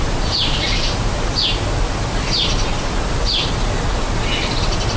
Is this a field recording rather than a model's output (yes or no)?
yes